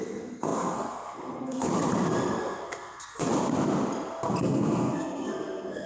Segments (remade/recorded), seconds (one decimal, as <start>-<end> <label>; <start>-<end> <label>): 0.0-1.7 remade; 1.7-2.4 recorded; 2.4-3.3 remade; 3.3-4.4 recorded; 4.4-5.9 remade